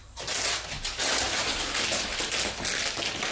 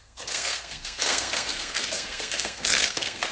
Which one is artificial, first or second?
second